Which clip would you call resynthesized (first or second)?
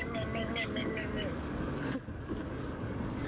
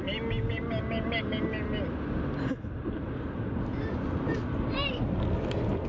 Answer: first